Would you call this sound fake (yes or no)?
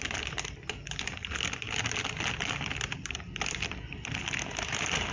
no